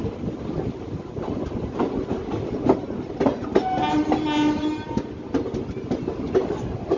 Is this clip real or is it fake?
real